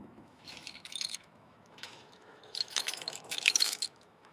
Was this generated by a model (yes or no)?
yes